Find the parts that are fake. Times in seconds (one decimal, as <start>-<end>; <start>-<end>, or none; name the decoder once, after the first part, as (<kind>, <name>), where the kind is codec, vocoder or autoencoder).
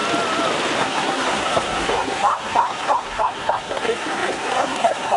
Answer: 0.8-5.2 (codec, SNAC)